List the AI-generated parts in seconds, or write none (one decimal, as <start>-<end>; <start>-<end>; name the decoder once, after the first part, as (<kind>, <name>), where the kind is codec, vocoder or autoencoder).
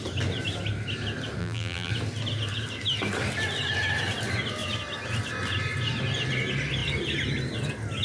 1.4-1.9 (vocoder, BigVGAN v2)